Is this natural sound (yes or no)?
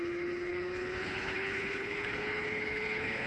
no